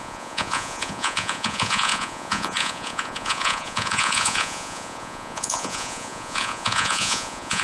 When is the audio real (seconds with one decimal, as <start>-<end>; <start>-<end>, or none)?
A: none